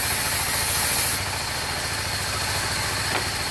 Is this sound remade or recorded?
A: recorded